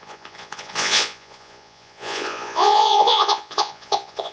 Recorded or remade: remade